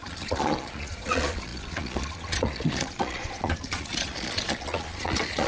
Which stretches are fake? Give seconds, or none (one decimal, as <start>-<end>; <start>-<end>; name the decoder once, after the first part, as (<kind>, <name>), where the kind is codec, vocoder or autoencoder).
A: 0.0-5.5 (vocoder, Vocos)